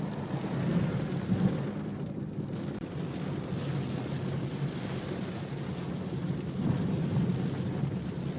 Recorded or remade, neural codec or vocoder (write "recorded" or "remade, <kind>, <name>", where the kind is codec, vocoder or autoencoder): recorded